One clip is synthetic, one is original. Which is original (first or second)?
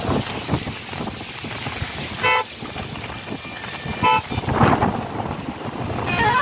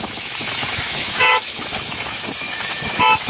first